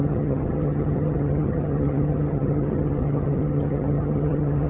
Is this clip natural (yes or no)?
no